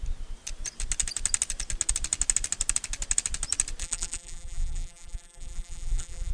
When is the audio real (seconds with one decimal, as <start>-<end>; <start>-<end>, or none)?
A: 0.0-3.8